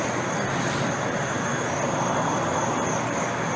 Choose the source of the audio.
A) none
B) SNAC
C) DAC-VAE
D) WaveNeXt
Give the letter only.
A